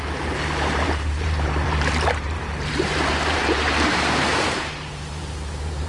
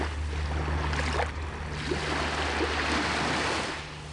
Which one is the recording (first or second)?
second